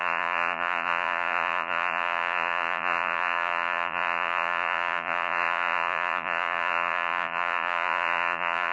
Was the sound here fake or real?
fake